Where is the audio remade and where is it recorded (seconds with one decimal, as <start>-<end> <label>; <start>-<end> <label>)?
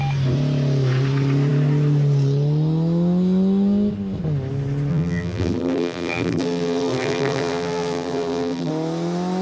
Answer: 0.0-4.9 recorded; 4.9-8.7 remade; 8.7-9.4 recorded